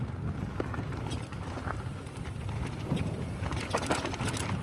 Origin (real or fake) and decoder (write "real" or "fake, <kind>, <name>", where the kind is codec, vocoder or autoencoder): real